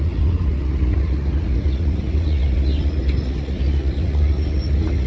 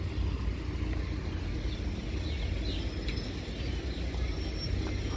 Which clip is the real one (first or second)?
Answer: second